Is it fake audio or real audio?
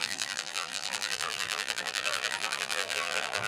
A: fake